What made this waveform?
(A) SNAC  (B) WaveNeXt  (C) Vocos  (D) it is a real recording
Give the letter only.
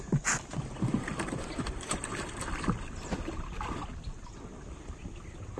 D